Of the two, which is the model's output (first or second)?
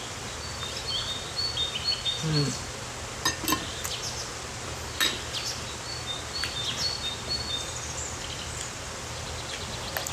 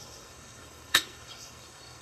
second